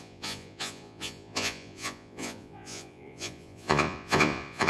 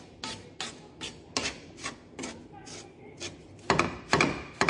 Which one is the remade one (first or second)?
first